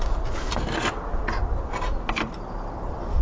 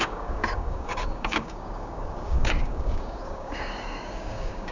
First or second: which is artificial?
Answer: second